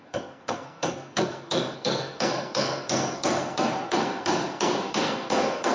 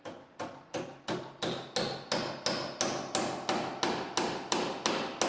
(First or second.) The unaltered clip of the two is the second